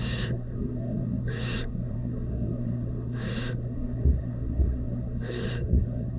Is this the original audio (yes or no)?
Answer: no